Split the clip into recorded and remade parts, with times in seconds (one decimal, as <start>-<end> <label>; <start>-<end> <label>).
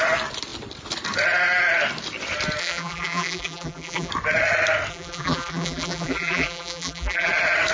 0.0-2.6 recorded; 2.6-4.1 remade; 4.1-4.9 recorded; 4.9-7.3 remade; 7.3-7.7 recorded